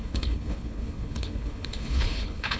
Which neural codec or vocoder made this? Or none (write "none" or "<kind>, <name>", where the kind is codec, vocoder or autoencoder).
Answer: codec, HILCodec